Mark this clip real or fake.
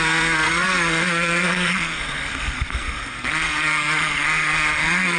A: fake